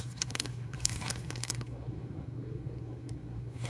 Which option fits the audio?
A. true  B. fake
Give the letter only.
B